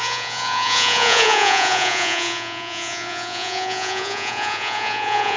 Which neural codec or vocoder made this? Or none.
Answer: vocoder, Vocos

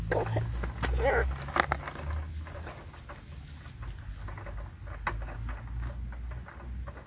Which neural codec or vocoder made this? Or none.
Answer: none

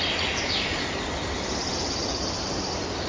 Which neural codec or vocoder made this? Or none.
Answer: none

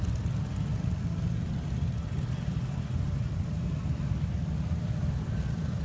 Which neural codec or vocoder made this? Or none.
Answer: none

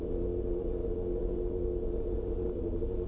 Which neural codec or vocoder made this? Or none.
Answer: none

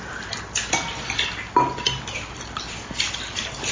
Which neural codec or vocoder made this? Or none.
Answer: none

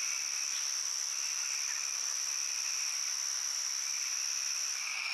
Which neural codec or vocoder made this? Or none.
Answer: vocoder, BigVGAN v2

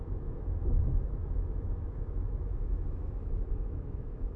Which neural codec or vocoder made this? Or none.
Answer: autoencoder, DAC-VAE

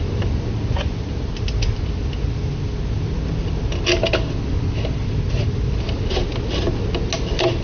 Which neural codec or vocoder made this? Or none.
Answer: none